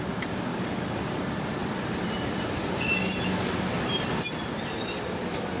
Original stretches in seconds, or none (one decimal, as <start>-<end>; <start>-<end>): 0.0-0.5; 1.0-5.6